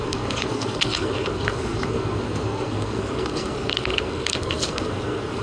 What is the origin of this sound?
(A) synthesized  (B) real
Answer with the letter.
A